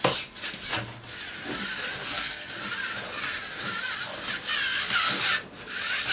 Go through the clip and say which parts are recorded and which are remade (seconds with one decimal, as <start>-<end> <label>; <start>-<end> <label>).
0.0-2.0 recorded; 2.0-2.5 remade; 2.5-6.1 recorded